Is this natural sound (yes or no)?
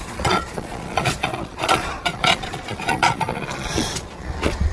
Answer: no